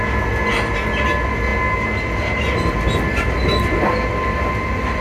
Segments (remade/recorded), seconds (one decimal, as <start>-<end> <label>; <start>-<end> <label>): 0.0-5.0 recorded